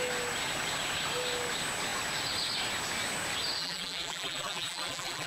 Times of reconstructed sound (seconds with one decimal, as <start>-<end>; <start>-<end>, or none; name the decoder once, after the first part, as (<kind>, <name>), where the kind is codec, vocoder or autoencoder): 3.6-5.3 (vocoder, BigVGAN v2)